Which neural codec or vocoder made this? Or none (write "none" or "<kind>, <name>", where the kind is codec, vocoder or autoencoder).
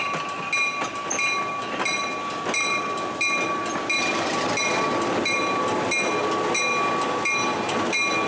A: none